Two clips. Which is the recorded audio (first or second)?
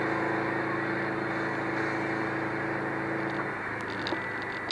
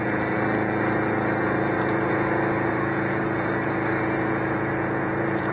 first